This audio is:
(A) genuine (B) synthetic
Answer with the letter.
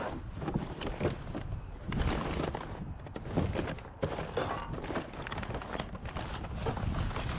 A